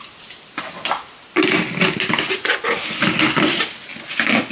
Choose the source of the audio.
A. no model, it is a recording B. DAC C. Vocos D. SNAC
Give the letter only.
A